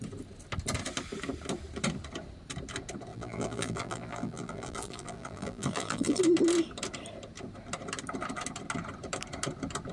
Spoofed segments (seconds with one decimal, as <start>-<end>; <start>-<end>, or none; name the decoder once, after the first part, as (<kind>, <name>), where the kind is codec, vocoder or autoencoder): 3.1-6.2 (vocoder, BigVGAN v2)